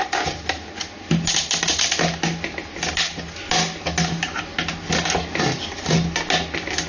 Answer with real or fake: real